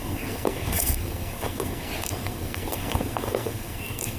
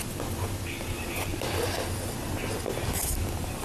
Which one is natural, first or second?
second